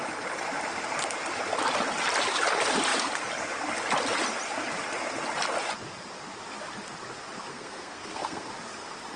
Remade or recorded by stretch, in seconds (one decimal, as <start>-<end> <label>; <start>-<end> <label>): 0.0-7.5 recorded; 7.5-8.5 remade; 8.5-9.2 recorded